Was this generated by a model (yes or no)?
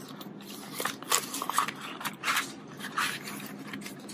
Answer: no